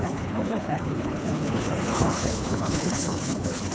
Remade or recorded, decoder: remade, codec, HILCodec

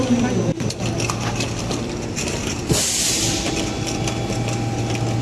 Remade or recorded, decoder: recorded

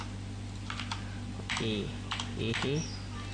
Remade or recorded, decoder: recorded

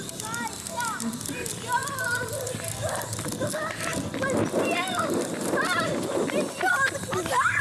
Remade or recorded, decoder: recorded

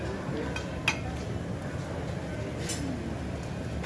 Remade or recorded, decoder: recorded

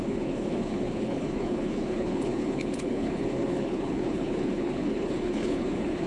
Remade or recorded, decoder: remade, codec, HILCodec